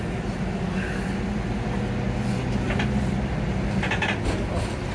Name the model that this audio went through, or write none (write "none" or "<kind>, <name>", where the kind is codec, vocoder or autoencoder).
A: none